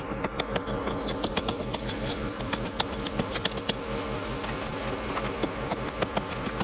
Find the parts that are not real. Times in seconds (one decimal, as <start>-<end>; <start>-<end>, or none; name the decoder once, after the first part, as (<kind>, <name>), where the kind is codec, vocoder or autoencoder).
none